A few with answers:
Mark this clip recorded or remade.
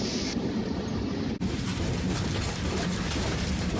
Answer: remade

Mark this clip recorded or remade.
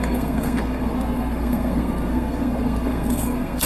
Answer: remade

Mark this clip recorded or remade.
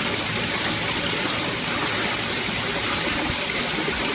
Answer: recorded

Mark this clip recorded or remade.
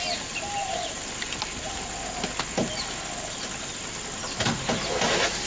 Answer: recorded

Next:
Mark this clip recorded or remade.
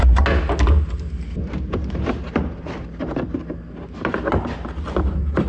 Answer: recorded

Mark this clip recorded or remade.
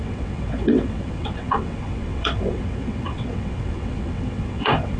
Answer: remade